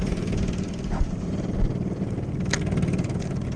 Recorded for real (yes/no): yes